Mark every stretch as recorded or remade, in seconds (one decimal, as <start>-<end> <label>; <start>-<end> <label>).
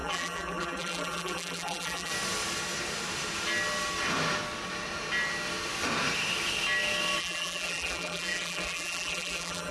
0.0-2.1 remade; 2.1-7.2 recorded; 7.2-9.7 remade